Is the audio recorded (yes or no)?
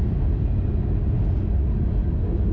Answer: yes